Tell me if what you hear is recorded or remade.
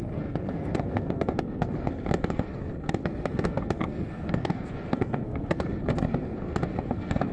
remade